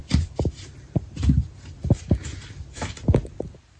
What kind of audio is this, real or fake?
real